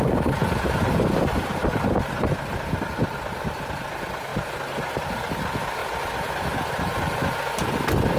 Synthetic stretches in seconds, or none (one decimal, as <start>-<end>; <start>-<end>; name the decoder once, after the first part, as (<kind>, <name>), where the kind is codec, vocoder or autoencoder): 0.0-0.4 (vocoder, BigVGAN v2); 0.9-1.6; 2.5-4.3; 4.9-5.8; 7.7-8.2